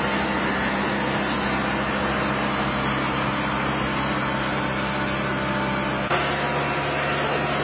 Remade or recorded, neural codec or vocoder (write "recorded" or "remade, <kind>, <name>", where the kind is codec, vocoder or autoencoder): recorded